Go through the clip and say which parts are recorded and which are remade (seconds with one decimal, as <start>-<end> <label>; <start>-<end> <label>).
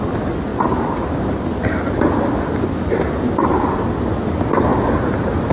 0.0-0.5 recorded; 0.5-3.8 remade; 3.8-4.7 recorded; 4.7-5.5 remade